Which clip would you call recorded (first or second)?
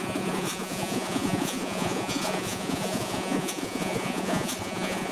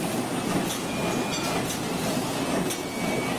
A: second